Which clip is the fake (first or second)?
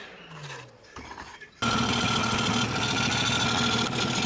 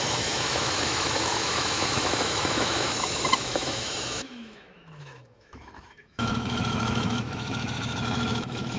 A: second